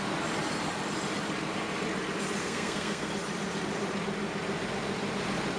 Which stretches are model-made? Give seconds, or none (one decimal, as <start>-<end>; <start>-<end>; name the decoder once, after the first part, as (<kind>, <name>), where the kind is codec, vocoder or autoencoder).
2.4-3.1 (codec, SNAC)